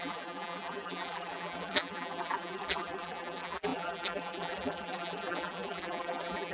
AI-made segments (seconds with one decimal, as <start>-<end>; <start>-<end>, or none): 0.0-6.5